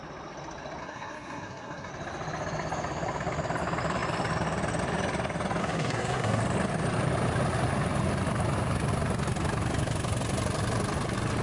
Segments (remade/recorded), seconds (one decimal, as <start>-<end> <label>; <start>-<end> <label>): 0.0-0.8 recorded; 0.8-1.9 remade; 1.9-5.6 recorded; 5.6-6.4 remade; 6.4-11.4 recorded